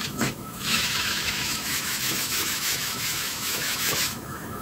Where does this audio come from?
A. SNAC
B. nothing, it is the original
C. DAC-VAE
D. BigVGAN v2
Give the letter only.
C